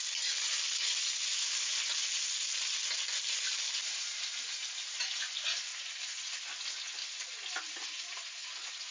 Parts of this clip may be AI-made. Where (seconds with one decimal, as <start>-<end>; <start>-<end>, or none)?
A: none